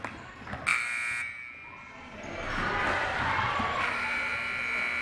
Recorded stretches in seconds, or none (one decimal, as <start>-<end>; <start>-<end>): 0.0-5.0